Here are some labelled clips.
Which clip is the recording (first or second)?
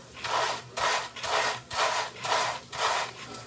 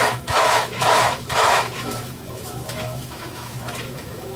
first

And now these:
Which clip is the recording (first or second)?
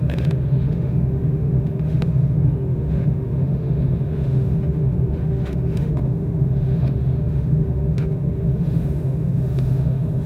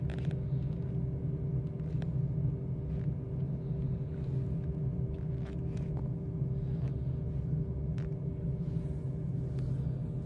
second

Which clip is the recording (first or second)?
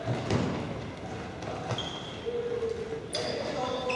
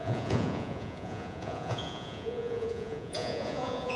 first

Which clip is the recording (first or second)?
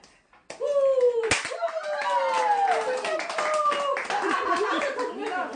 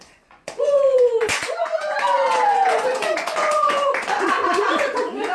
first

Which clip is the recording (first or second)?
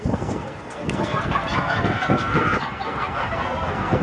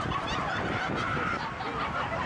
second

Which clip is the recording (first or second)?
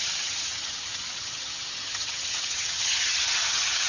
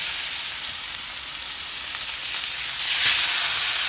second